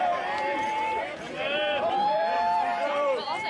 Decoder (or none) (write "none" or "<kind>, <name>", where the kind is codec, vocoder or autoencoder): vocoder, BigVGAN v2